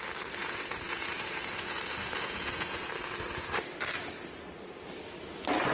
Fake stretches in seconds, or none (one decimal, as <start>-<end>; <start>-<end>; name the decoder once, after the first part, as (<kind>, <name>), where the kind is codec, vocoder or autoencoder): 0.4-2.9 (vocoder, Vocos)

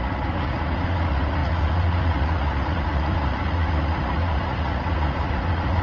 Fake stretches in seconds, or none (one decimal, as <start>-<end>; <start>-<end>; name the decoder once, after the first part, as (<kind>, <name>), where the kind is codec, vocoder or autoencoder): 0.0-5.8 (vocoder, Vocos)

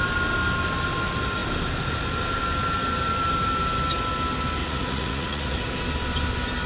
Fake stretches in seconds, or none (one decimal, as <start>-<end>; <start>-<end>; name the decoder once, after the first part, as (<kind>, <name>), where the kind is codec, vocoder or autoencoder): 4.6-5.6 (vocoder, Vocos)

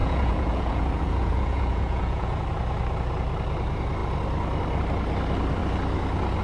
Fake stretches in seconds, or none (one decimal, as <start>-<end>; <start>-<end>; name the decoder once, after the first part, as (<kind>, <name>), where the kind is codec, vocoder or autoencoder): 0.0-2.4 (vocoder, Vocos)

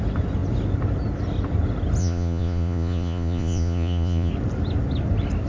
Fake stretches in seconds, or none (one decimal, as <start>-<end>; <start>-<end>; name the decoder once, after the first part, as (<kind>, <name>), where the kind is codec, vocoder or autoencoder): 2.0-4.3 (vocoder, Vocos)

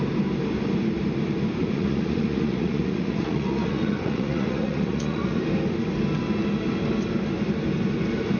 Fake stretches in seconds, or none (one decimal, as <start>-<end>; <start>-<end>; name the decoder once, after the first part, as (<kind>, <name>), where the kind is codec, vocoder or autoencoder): 1.6-5.4 (vocoder, Vocos)

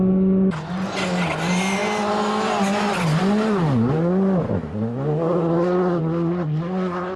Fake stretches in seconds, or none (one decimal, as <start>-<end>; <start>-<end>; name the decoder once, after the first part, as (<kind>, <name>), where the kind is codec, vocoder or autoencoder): none

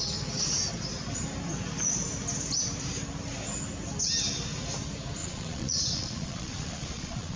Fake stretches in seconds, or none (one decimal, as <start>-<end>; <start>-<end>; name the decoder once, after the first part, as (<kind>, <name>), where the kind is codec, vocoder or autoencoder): 5.2-7.4 (vocoder, Vocos)